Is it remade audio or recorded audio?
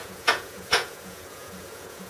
remade